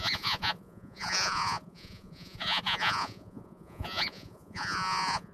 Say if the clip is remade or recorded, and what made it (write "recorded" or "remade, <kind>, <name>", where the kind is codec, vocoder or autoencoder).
remade, vocoder, Vocos